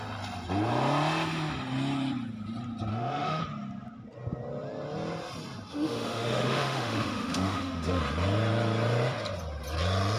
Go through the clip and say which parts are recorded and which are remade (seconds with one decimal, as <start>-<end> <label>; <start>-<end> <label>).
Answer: 0.0-2.9 recorded; 2.9-3.4 remade; 3.4-5.7 recorded; 5.7-8.0 remade; 8.0-10.2 recorded